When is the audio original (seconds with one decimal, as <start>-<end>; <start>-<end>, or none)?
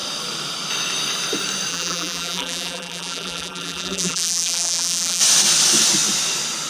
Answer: 0.0-1.7; 5.2-6.7